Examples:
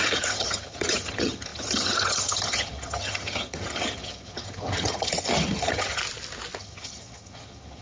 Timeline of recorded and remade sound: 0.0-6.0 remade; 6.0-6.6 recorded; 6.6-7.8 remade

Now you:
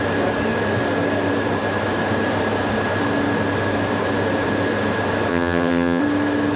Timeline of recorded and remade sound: 0.0-5.3 recorded; 5.3-6.0 remade; 6.0-6.6 recorded

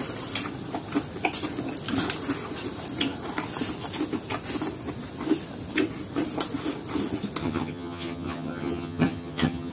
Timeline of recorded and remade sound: 0.0-7.4 recorded; 7.4-9.7 remade

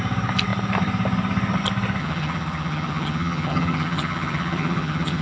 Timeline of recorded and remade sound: 0.0-2.0 recorded; 2.0-5.2 remade

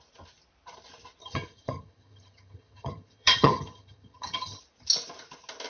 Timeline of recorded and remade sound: 0.0-1.2 recorded; 1.2-4.6 remade; 4.6-5.7 recorded

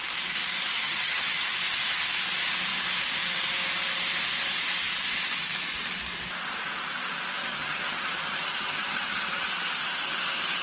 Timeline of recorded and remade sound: 0.0-0.8 recorded; 0.8-1.5 remade; 1.5-7.4 recorded; 7.4-9.5 remade; 9.5-10.6 recorded

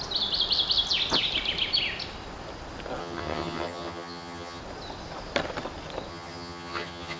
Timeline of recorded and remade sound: 0.0-3.0 recorded; 3.0-4.6 remade; 4.6-6.1 recorded; 6.1-7.2 remade